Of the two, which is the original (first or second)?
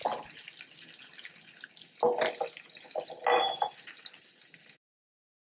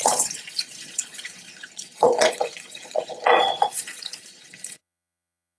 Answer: first